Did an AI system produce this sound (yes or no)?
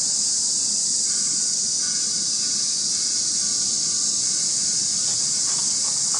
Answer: no